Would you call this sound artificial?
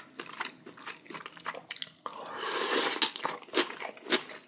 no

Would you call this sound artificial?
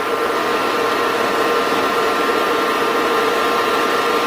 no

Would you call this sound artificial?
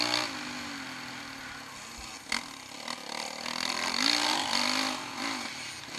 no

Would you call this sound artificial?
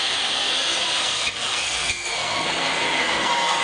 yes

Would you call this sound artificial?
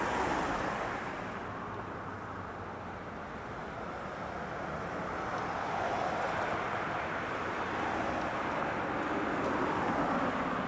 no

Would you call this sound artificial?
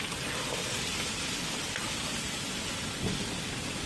no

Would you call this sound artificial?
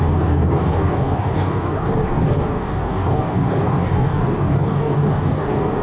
yes